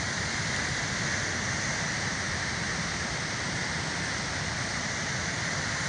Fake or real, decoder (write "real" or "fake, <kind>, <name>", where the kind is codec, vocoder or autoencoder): real